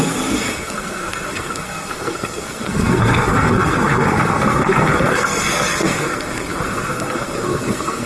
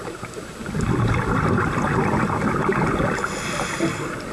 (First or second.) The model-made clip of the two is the first